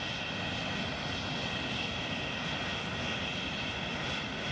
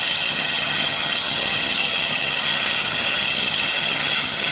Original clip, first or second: first